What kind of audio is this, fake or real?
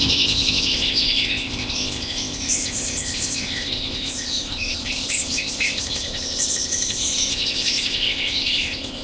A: fake